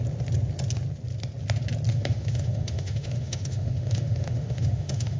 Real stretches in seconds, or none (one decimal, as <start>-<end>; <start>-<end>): 0.0-1.9